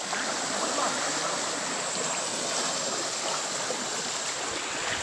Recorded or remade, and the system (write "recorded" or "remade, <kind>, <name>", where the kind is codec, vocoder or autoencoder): recorded